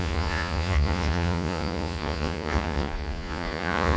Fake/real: fake